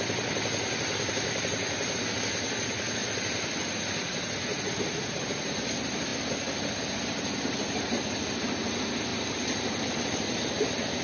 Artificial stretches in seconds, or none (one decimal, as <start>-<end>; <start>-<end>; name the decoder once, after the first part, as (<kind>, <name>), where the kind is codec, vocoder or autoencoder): none